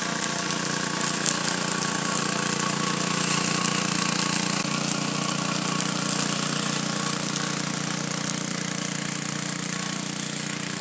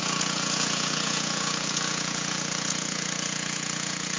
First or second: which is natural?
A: first